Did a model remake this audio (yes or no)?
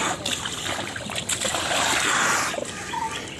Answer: no